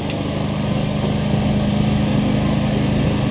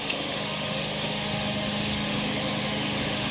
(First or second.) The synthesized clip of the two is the second